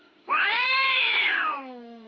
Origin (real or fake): fake